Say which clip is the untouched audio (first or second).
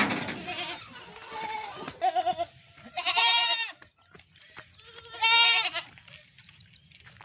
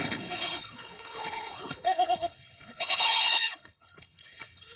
first